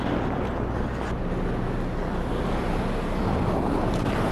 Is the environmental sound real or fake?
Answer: real